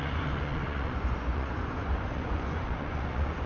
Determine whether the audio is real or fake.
fake